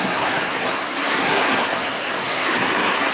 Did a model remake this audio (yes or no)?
yes